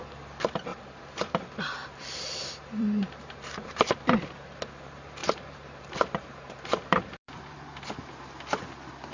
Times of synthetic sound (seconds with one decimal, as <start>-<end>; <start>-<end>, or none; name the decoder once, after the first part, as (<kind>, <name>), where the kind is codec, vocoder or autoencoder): 0.7-4.0 (vocoder, BigVGAN v2); 5.2-7.9

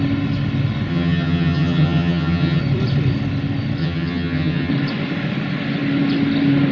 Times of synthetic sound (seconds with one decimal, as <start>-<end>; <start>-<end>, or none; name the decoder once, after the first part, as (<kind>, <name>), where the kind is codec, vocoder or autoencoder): 0.9-2.6 (vocoder, HiFi-GAN); 3.8-4.7

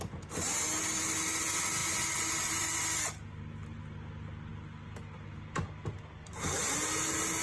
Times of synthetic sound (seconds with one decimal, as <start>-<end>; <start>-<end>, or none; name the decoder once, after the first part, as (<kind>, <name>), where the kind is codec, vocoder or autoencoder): none

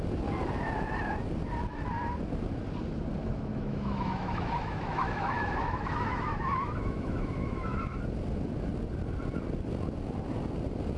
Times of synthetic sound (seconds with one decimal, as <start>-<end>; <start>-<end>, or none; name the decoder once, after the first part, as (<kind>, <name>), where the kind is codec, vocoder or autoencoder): 3.5-8.0 (autoencoder, DAC-VAE)

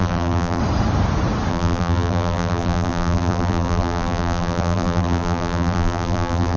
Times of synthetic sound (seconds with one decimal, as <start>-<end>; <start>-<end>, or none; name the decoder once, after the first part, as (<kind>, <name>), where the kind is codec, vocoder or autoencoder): 0.0-0.6 (vocoder, BigVGAN v2); 1.5-6.6

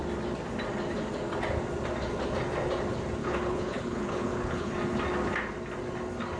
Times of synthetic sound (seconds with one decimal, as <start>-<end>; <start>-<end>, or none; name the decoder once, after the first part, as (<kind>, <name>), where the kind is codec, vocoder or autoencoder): 3.2-4.7 (codec, HILCodec)